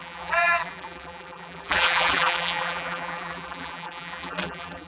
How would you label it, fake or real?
fake